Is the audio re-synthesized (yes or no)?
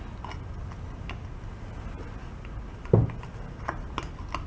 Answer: no